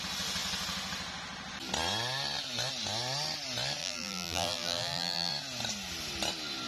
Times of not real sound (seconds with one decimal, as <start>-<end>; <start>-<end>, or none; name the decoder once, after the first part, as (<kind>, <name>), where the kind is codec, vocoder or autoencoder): 3.8-5.3 (vocoder, BigVGAN v2)